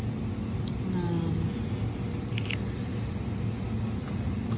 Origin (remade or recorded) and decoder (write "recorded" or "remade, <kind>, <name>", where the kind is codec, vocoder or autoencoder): recorded